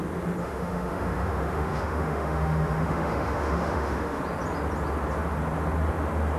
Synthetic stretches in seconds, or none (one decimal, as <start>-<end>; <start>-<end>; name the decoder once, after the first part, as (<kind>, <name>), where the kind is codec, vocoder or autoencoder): 0.4-4.2 (autoencoder, DAC-VAE)